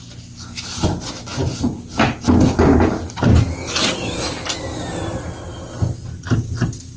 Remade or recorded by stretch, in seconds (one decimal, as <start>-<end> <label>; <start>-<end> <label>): 0.0-7.0 recorded